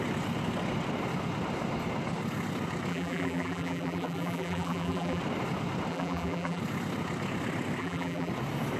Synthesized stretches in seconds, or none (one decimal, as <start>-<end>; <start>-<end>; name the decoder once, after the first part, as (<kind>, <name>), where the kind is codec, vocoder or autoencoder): 2.9-5.2 (vocoder, BigVGAN v2); 5.9-6.6; 7.8-8.3